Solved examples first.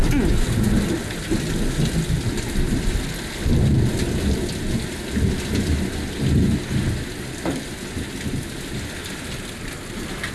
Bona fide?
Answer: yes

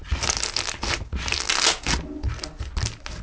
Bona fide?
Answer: yes